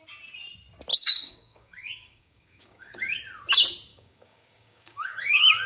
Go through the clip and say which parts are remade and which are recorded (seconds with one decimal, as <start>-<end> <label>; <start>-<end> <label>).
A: 0.0-0.9 recorded; 0.9-3.2 remade; 3.2-3.9 recorded; 3.9-5.7 remade